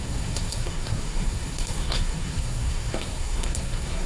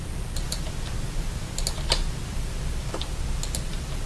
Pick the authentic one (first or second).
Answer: second